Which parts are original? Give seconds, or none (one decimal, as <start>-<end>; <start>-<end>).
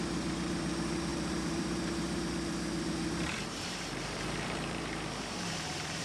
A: none